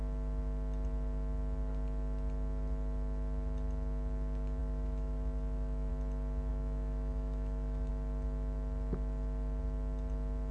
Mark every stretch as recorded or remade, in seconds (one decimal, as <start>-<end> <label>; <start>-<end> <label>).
0.0-4.6 recorded; 4.6-5.9 remade; 5.9-6.5 recorded; 6.5-7.9 remade; 7.9-10.5 recorded